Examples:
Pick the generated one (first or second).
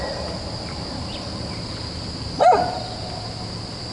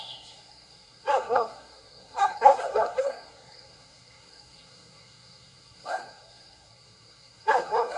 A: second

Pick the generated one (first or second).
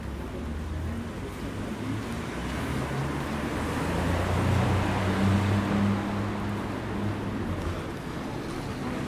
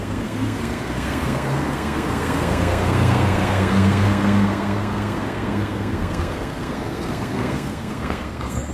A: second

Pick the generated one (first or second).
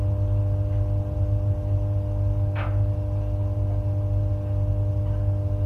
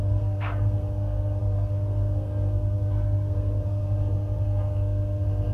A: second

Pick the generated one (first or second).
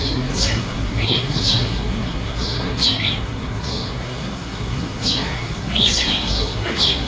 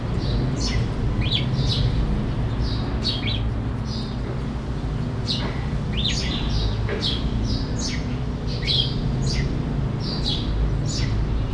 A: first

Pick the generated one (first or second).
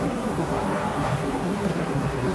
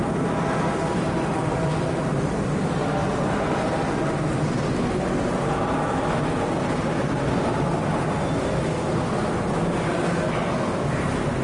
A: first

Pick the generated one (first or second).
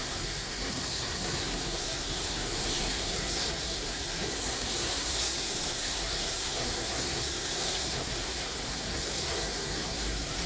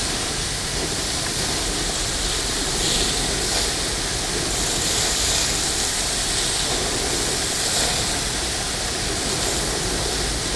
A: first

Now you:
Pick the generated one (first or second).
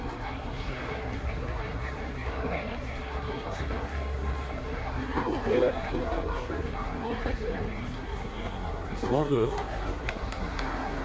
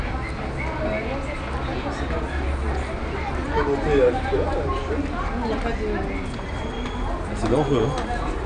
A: first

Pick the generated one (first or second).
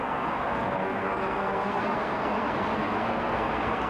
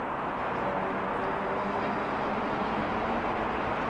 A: first